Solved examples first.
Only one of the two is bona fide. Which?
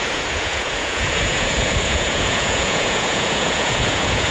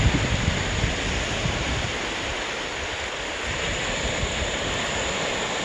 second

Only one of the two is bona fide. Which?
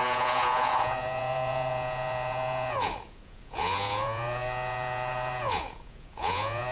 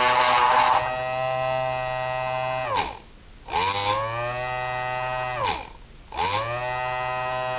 second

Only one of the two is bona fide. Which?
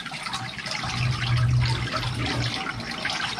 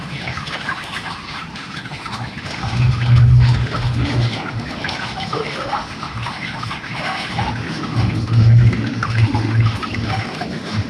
first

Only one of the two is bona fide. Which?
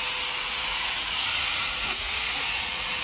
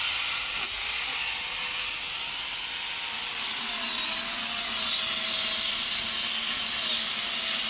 second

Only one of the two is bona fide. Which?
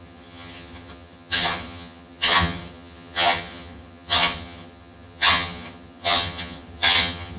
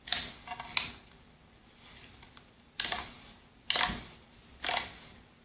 second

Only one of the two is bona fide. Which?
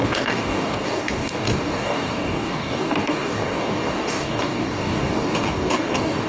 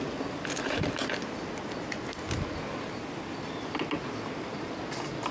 second